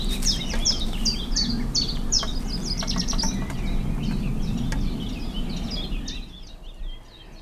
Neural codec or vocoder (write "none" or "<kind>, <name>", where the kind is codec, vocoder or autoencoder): none